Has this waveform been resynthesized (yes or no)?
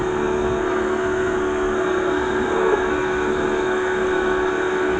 yes